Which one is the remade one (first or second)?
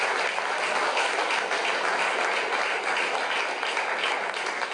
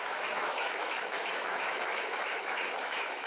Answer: second